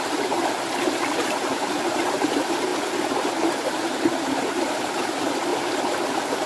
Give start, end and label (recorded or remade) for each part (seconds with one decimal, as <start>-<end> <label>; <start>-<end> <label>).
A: 0.0-2.7 remade; 2.7-4.5 recorded; 4.5-5.5 remade; 5.5-6.5 recorded